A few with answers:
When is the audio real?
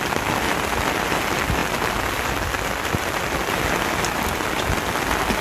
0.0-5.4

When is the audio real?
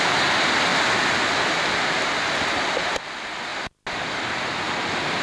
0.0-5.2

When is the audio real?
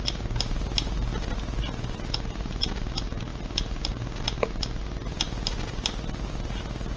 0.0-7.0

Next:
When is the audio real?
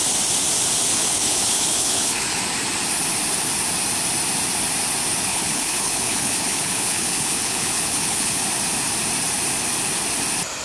0.0-0.9; 2.4-5.3; 8.4-10.6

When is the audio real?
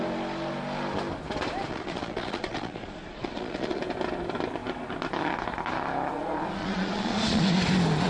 0.0-1.7; 3.8-6.6; 7.4-8.1